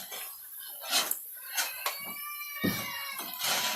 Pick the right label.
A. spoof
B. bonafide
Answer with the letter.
B